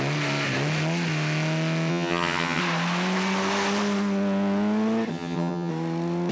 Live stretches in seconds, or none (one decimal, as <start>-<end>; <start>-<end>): 0.0-1.9; 2.6-5.1; 5.7-6.3